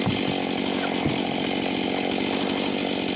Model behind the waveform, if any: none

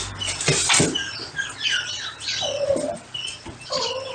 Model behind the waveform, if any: none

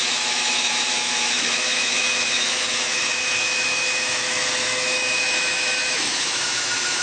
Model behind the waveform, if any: autoencoder, DAC-VAE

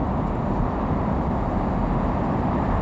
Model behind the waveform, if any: none